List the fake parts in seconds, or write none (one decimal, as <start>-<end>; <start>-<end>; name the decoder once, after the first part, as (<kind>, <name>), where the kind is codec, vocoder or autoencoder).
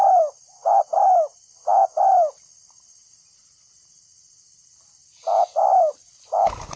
none